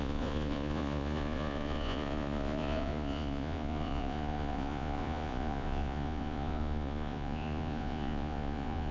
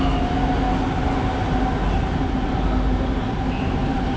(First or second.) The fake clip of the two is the first